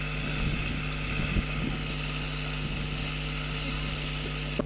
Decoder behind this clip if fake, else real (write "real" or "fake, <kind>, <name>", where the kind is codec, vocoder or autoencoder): real